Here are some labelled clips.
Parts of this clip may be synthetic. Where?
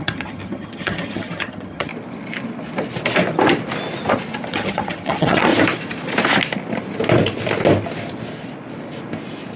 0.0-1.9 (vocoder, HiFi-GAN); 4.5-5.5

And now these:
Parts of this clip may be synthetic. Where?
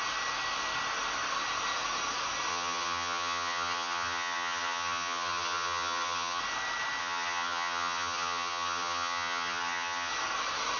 2.5-6.4 (vocoder, HiFi-GAN); 7.0-10.1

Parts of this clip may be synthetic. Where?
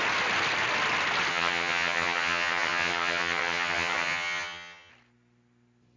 1.3-4.9 (vocoder, HiFi-GAN)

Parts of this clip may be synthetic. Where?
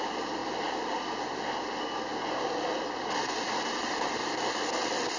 none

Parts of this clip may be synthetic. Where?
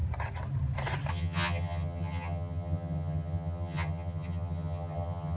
1.1-5.4 (vocoder, HiFi-GAN)